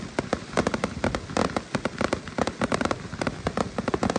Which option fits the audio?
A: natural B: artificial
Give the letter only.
A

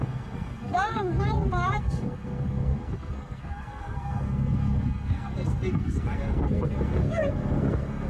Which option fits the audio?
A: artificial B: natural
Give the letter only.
A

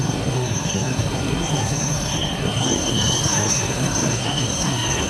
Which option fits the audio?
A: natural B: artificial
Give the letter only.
B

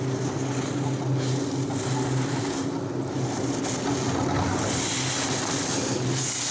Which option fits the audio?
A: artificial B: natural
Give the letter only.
B